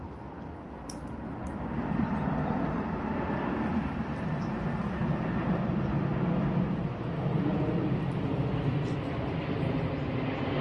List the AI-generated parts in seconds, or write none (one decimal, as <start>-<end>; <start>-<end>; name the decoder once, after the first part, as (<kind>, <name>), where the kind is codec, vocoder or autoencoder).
none